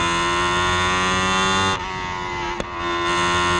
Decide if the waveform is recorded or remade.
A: recorded